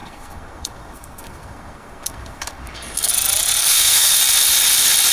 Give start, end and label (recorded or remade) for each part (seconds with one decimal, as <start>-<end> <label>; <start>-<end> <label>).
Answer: 0.0-3.1 remade; 3.1-3.6 recorded; 3.6-4.2 remade; 4.2-5.1 recorded